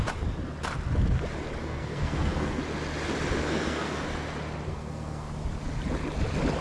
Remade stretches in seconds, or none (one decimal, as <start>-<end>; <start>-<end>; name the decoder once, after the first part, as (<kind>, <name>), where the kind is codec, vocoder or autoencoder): 1.6-2.6 (codec, SNAC); 3.4-4.0; 4.7-5.3